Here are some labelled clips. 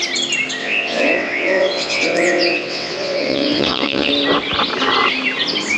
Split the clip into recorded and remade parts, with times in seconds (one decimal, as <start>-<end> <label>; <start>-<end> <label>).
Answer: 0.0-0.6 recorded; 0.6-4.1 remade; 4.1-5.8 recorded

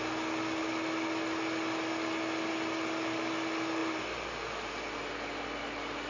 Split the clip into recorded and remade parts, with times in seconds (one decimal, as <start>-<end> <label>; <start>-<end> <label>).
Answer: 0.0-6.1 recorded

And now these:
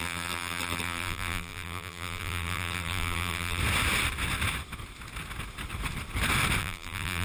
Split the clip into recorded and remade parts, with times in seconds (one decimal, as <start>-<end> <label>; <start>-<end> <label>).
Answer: 0.0-3.6 remade; 3.6-6.6 recorded; 6.6-7.2 remade